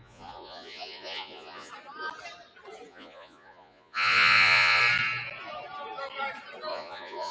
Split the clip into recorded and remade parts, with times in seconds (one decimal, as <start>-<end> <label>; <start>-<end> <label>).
0.0-1.7 remade; 1.7-2.9 recorded; 2.9-4.8 remade; 4.8-6.7 recorded; 6.7-7.3 remade